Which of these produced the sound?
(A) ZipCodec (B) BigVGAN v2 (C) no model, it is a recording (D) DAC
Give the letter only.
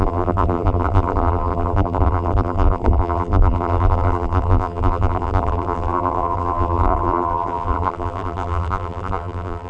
B